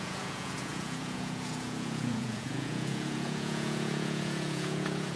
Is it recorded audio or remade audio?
remade